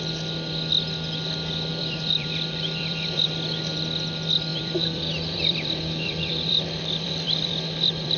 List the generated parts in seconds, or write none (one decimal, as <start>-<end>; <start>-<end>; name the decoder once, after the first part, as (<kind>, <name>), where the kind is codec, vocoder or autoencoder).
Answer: 1.7-3.3 (vocoder, BigVGAN v2); 4.5-8.2